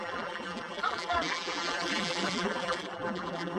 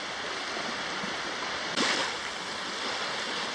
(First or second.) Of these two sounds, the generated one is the first